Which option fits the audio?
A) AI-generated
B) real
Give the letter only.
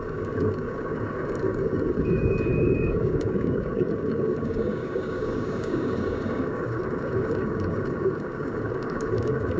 A